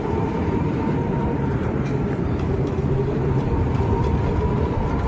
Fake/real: fake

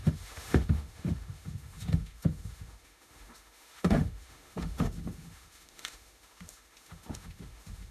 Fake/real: fake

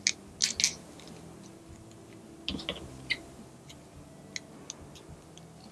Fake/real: real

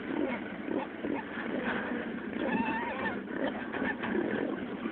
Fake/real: fake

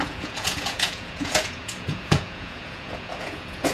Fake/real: fake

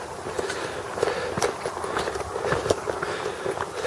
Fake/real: real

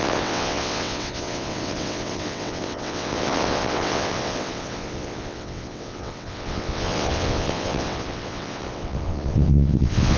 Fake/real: fake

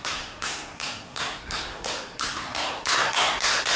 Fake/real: fake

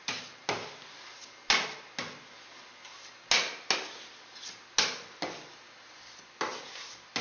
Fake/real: real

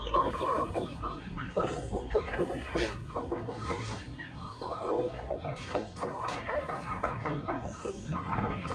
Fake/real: fake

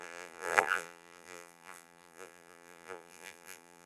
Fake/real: fake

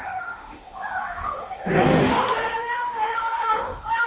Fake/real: fake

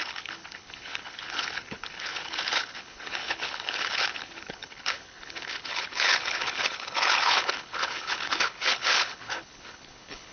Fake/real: fake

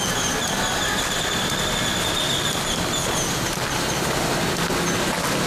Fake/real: real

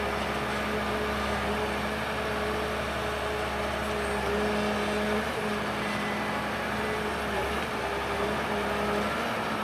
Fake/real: real